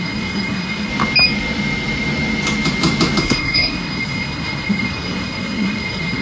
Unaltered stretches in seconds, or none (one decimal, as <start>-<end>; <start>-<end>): 0.9-3.2